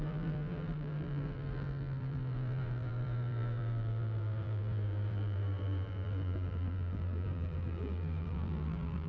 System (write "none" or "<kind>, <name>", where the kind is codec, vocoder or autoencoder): vocoder, BigVGAN v2